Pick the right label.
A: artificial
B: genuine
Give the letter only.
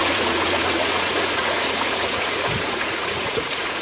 A